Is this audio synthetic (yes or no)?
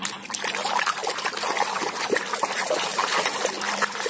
no